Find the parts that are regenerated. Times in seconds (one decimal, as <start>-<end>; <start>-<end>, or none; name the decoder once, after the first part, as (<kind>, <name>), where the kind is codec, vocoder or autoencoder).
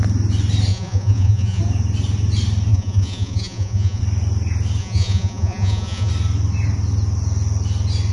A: 0.7-1.6 (vocoder, Vocos); 2.7-4.0; 4.8-6.1